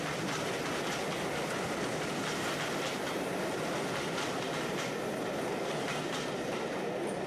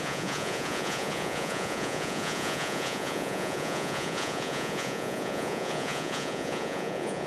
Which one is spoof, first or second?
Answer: second